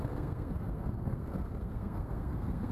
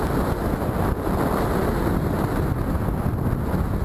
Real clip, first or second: second